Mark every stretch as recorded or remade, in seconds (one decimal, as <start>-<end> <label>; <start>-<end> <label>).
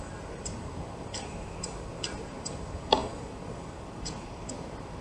0.0-5.0 remade